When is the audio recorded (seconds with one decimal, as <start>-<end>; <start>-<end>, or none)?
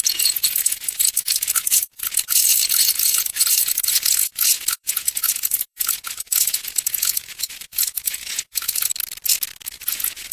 8.9-9.7